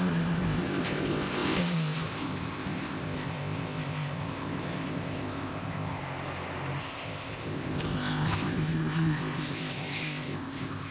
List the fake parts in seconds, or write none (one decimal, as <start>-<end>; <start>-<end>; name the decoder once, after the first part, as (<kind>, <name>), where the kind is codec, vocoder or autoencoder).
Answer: 0.0-6.0 (codec, ZipCodec); 6.8-10.9